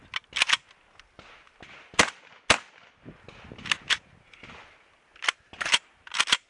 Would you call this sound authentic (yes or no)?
yes